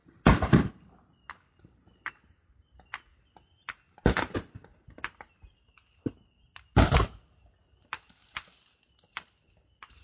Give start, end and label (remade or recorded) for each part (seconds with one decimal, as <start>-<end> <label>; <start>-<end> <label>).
0.0-10.0 remade